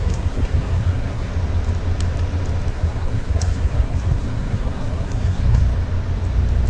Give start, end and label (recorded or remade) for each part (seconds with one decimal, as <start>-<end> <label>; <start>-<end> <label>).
0.0-1.3 remade; 1.3-2.7 recorded; 2.7-5.6 remade; 5.6-6.7 recorded